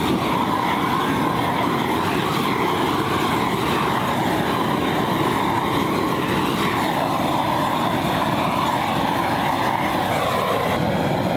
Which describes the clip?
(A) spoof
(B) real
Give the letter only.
B